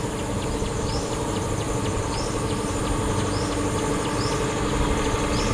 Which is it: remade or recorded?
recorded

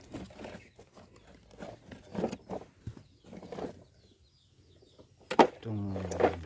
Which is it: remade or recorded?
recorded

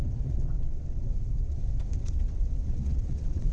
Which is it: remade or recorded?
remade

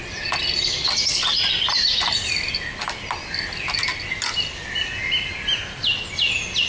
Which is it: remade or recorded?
recorded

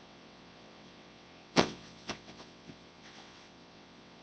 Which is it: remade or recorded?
remade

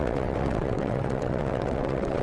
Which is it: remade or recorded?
remade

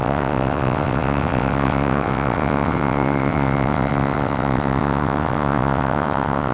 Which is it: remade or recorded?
remade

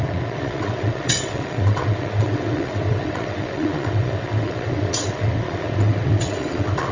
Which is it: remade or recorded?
remade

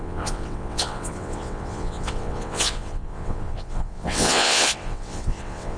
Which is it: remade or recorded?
remade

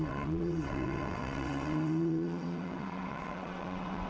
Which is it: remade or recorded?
remade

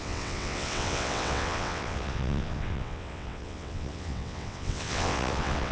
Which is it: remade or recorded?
remade